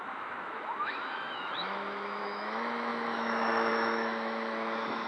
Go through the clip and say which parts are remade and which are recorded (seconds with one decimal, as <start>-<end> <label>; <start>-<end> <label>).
0.0-5.1 remade